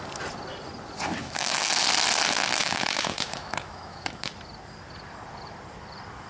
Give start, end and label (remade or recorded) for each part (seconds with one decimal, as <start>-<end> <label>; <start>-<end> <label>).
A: 0.0-1.2 recorded; 1.2-1.7 remade; 1.7-2.6 recorded; 2.6-4.3 remade; 4.3-6.3 recorded